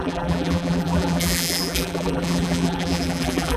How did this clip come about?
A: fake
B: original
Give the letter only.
A